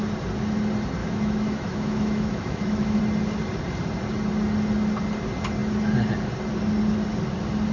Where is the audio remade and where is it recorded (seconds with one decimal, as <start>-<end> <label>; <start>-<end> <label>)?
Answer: 0.0-1.0 recorded; 1.0-3.0 remade; 3.0-7.7 recorded